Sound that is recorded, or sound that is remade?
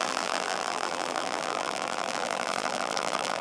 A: remade